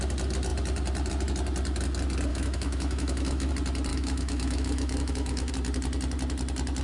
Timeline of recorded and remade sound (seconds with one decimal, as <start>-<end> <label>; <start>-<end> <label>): 0.0-2.3 recorded; 2.3-3.5 remade; 3.5-3.9 recorded; 3.9-5.5 remade; 5.5-6.8 recorded